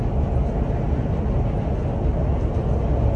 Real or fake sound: real